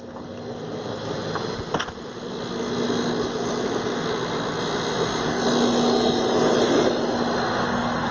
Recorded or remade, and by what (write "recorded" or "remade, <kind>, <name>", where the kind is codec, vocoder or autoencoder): recorded